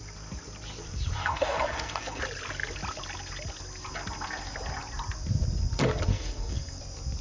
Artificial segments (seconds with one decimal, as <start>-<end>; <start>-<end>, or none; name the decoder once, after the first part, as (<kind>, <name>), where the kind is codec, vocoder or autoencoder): 1.2-2.2 (codec, SNAC); 6.1-6.8